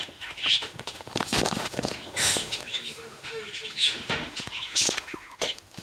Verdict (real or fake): fake